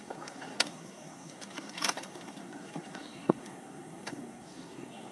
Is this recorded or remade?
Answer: remade